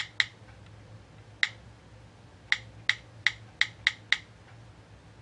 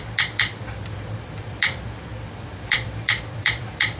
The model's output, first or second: second